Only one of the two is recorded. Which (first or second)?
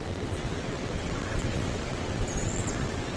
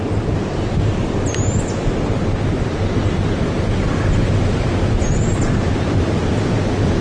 second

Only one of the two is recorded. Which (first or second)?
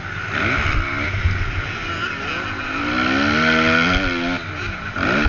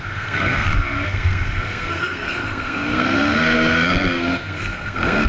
first